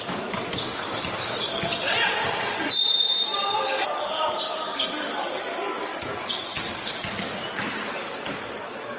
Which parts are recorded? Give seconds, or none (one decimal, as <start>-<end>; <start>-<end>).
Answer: 1.7-3.6; 5.9-7.9